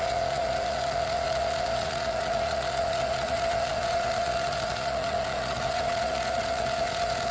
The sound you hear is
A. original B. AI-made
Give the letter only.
B